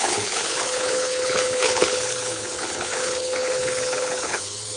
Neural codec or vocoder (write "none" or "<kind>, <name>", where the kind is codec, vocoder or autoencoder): codec, HILCodec